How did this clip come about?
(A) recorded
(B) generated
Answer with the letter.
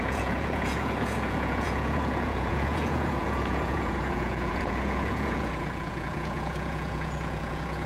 B